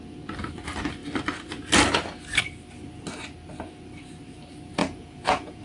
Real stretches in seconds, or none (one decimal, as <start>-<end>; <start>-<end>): 0.0-4.8